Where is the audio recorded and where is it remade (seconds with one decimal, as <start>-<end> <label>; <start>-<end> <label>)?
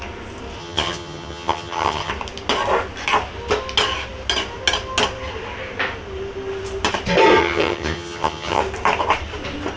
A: 0.0-0.6 recorded; 0.6-2.1 remade; 2.1-7.4 recorded; 7.4-8.6 remade; 8.6-9.8 recorded